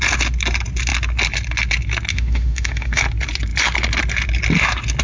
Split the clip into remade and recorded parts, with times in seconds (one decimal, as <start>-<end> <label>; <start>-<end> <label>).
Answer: 0.0-2.1 recorded; 2.1-3.0 remade; 3.0-5.0 recorded